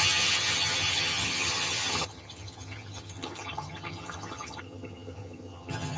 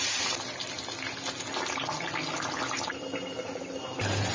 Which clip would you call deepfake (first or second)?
first